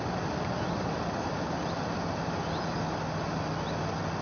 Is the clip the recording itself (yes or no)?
yes